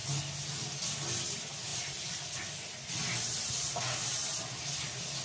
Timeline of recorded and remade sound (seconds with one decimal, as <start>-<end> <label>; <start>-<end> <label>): 0.0-5.2 recorded